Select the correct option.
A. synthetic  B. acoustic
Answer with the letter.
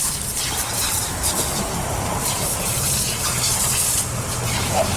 A